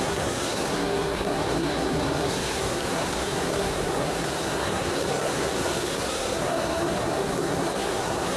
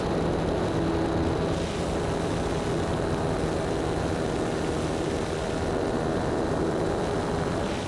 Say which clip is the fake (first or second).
first